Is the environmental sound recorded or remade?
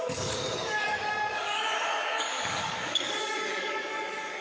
remade